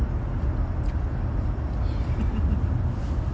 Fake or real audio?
real